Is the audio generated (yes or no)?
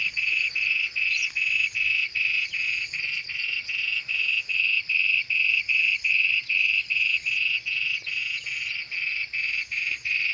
yes